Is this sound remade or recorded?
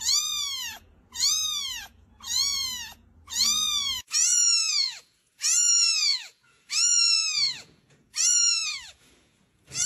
remade